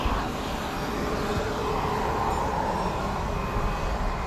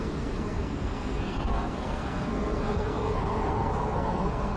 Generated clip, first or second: second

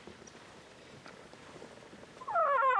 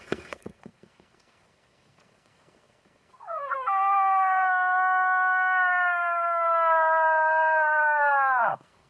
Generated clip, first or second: second